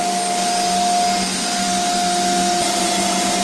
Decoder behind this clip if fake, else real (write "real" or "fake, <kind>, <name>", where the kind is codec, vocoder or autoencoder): real